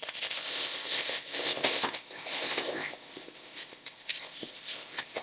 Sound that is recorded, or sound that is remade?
remade